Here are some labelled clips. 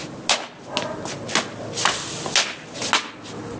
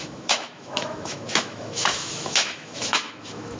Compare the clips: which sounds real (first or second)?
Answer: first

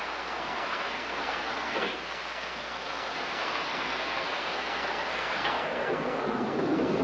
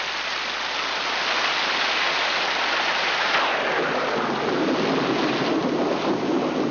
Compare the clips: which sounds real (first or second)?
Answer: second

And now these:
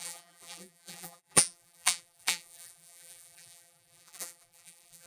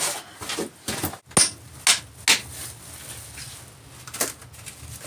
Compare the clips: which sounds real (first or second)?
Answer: second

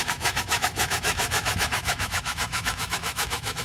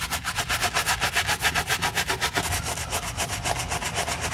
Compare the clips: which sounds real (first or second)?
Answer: second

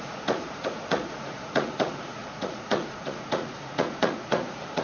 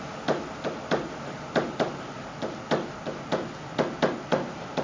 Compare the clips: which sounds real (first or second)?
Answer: second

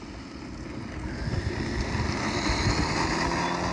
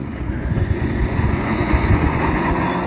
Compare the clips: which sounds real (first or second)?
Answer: first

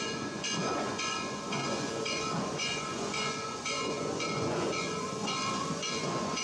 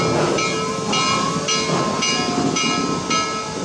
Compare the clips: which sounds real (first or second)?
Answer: second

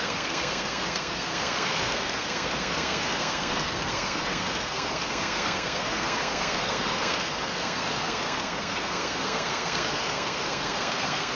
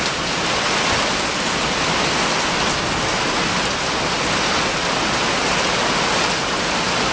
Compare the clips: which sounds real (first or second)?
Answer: second